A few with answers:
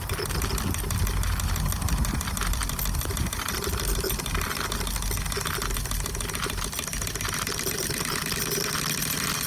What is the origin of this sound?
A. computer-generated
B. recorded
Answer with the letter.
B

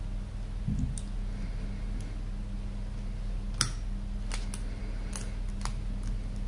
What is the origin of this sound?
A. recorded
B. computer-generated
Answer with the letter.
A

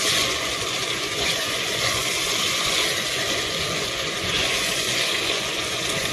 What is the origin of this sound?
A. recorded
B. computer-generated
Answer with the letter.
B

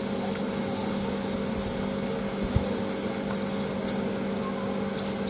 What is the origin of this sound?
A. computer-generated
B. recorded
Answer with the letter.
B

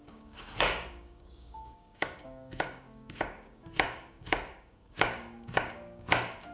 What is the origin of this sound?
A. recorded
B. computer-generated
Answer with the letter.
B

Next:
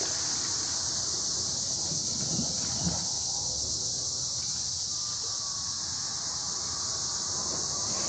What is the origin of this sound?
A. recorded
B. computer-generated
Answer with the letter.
A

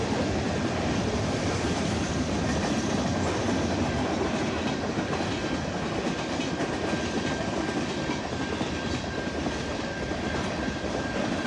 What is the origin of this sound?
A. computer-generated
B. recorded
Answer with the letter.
A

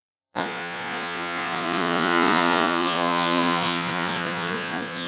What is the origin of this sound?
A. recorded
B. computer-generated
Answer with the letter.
B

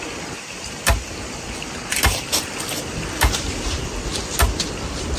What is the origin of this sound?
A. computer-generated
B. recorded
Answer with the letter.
B